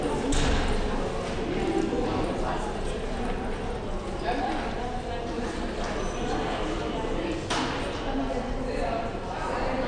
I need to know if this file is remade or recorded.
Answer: recorded